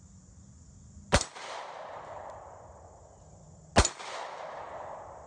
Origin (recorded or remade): recorded